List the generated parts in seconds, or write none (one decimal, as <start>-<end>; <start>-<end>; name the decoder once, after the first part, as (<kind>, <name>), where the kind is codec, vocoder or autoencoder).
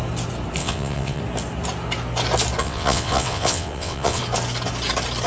0.6-1.2 (vocoder, WaveNeXt); 2.6-4.2